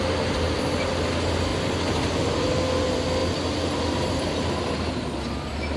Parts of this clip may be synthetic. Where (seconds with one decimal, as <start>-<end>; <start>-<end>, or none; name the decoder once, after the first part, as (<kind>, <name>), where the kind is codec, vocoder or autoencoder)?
none